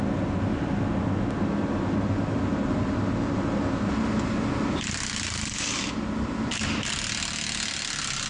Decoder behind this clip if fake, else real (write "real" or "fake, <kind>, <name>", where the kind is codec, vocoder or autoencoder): real